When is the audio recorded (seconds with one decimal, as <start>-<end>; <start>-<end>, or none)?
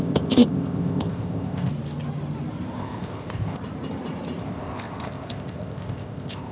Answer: 1.7-2.8; 3.6-4.4